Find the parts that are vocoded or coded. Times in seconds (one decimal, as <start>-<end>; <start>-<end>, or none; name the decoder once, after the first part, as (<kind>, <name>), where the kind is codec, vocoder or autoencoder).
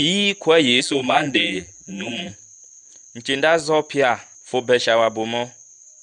0.8-2.3 (vocoder, BigVGAN v2)